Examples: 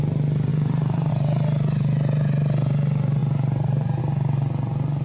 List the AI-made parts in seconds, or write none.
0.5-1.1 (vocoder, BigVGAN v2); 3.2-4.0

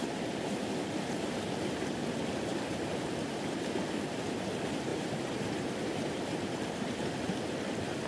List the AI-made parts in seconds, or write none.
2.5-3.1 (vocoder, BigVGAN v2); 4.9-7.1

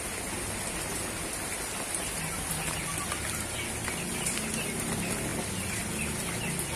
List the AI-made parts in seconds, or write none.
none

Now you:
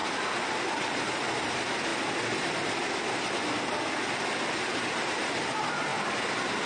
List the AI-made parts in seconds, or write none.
0.6-1.9 (vocoder, BigVGAN v2); 4.7-5.9